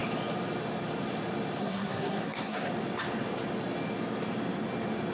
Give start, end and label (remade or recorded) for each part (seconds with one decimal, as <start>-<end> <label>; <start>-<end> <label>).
0.0-1.6 recorded; 1.6-2.7 remade; 2.7-5.1 recorded